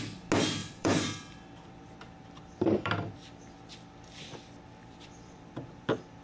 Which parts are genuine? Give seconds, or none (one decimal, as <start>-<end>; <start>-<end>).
0.0-0.6; 3.4-4.8